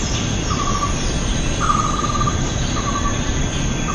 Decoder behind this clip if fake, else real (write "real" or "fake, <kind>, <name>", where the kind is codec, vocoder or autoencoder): real